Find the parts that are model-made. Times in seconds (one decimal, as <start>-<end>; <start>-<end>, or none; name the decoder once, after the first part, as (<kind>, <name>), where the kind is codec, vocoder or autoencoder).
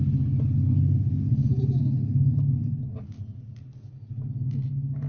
none